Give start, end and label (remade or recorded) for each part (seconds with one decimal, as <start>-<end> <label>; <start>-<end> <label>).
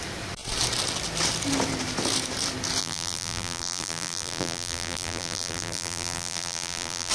0.0-2.8 recorded; 2.8-7.1 remade